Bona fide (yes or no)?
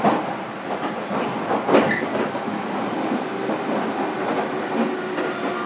yes